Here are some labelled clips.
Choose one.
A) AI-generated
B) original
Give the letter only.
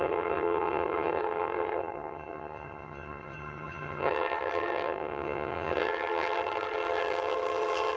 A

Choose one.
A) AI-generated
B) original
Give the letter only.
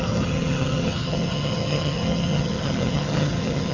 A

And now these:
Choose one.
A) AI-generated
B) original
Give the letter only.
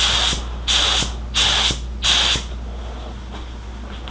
B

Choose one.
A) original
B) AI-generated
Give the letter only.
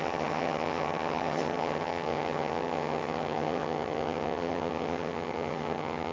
B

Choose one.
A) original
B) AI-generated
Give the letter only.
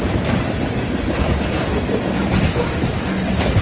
A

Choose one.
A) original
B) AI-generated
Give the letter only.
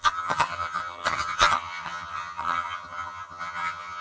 B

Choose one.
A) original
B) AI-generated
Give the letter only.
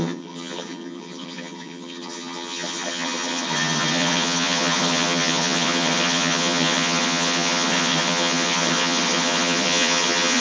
B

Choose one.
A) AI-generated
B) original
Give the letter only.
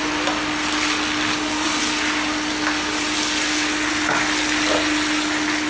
B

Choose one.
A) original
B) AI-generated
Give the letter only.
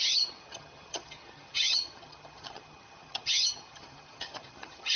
B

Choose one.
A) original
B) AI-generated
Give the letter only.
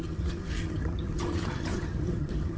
B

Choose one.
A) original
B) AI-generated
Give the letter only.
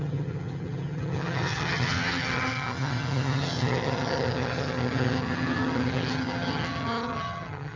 B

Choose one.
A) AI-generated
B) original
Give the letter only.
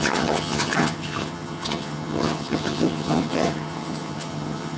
A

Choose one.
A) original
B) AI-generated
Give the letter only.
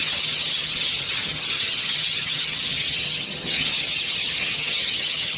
B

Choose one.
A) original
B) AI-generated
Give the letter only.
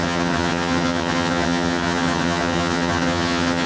B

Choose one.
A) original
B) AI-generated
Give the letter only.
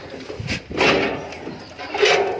A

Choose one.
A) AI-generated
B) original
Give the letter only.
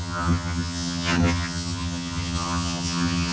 A